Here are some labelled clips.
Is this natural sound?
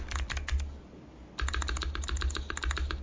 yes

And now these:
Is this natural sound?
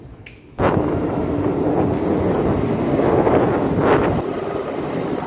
yes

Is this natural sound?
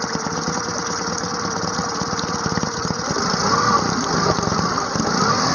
yes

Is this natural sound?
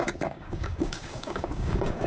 no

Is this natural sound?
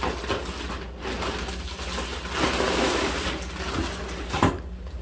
yes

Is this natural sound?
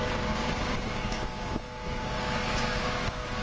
no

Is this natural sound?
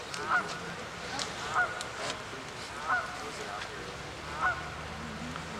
yes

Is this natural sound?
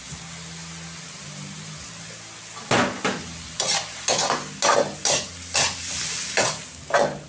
yes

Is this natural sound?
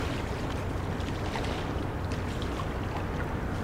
yes